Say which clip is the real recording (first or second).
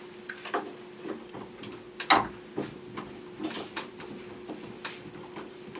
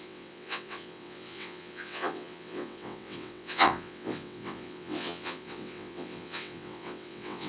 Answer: first